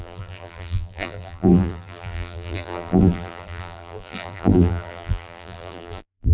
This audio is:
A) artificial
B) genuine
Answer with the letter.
A